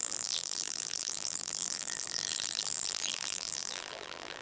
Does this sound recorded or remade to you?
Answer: remade